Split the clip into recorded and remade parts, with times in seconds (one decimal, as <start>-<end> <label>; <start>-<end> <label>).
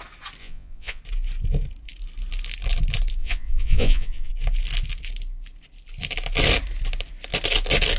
0.0-0.4 recorded; 0.4-1.0 remade; 1.0-3.2 recorded; 3.2-4.3 remade; 4.3-8.0 recorded